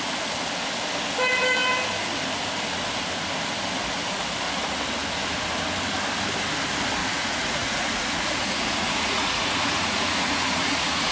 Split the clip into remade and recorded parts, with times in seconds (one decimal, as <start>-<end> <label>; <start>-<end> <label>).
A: 0.0-7.0 recorded; 7.0-11.1 remade